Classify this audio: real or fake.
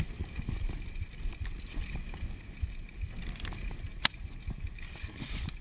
real